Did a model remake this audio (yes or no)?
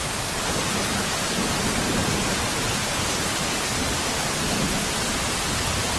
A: no